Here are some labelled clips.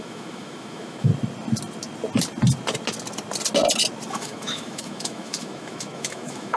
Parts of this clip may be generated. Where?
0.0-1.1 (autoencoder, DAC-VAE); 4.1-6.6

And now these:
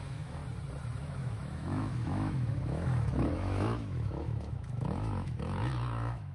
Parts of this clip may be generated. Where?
0.0-0.4 (autoencoder, DAC-VAE); 1.0-6.3

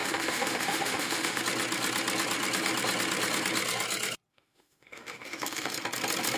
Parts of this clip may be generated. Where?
0.0-1.4 (autoencoder, DAC-VAE); 4.3-5.7

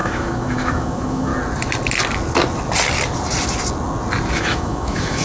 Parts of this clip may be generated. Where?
0.0-1.3 (autoencoder, DAC-VAE); 4.4-5.2

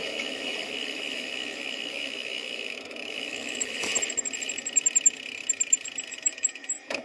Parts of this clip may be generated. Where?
0.0-3.9 (autoencoder, DAC-VAE); 6.1-7.0